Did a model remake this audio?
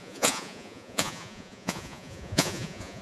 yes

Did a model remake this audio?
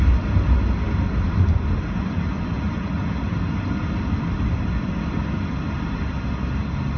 no